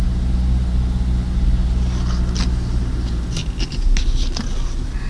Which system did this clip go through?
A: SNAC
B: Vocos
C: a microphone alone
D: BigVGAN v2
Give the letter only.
C